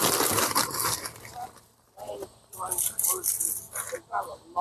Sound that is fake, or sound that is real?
real